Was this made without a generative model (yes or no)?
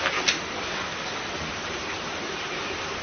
yes